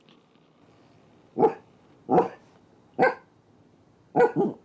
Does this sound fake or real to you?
real